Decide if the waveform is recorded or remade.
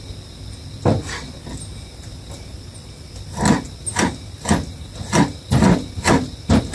recorded